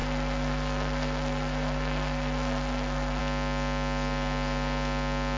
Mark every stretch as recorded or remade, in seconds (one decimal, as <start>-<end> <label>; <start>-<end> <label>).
0.0-3.2 remade; 3.2-5.4 recorded